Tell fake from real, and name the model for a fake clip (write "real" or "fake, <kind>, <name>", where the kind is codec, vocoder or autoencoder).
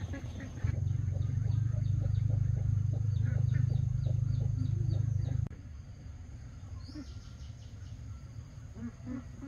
fake, vocoder, BigVGAN v2